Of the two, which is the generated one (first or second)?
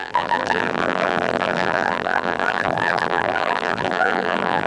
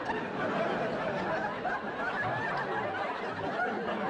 first